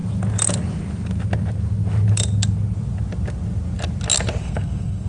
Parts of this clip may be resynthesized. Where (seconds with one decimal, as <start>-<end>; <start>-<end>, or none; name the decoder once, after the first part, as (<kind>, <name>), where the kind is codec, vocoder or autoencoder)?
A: 4.4-5.1 (codec, SNAC)